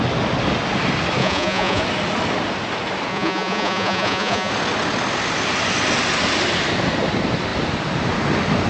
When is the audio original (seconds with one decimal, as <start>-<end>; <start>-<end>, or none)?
0.0-1.2; 1.8-3.1; 4.5-8.7